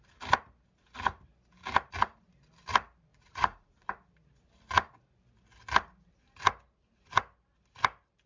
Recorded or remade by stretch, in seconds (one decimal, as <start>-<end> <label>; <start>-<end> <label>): 0.0-3.1 recorded; 3.1-3.9 remade; 3.9-8.3 recorded